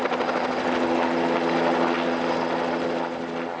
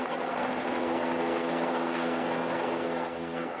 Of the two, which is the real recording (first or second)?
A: first